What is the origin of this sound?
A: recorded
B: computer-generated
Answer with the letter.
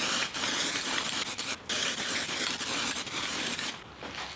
A